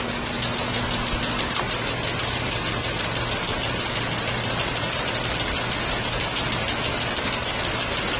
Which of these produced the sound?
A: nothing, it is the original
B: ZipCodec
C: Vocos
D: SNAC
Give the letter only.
A